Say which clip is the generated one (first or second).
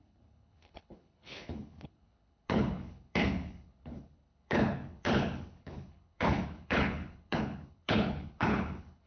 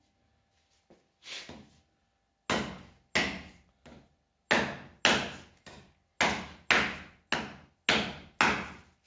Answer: first